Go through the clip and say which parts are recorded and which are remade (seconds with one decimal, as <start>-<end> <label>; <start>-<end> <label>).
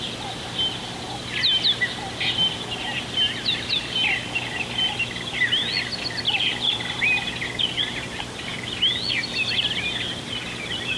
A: 0.0-11.0 recorded